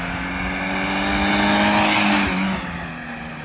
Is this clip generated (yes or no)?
no